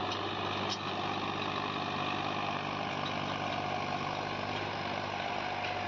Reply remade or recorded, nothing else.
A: recorded